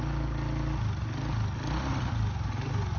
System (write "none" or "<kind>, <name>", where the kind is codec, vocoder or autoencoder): none